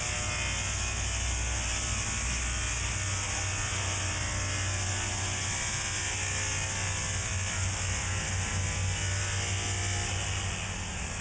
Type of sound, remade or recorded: recorded